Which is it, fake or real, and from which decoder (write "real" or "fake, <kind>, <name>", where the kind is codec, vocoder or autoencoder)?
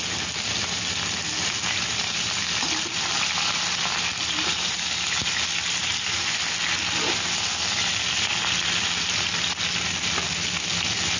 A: real